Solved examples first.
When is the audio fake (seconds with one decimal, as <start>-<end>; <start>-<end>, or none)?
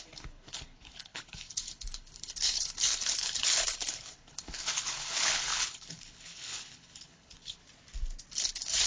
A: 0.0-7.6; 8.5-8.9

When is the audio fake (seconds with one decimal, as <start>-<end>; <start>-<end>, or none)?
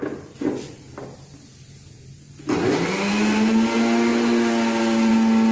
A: none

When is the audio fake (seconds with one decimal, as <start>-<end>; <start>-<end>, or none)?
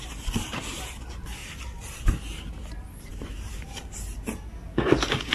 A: none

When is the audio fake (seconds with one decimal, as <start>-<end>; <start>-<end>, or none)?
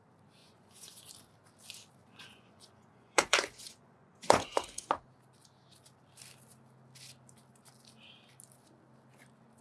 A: 0.4-1.1; 2.0-4.9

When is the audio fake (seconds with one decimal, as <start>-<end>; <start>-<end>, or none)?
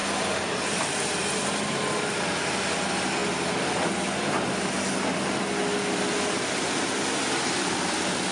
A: none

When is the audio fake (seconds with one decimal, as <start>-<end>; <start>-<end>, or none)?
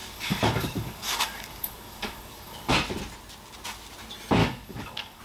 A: 0.0-2.7; 4.4-5.2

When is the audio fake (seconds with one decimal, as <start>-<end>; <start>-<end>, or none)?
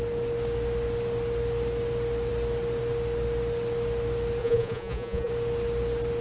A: 4.4-5.3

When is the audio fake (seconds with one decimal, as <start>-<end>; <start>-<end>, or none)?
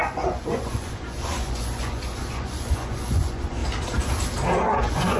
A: 0.0-3.6; 4.8-5.2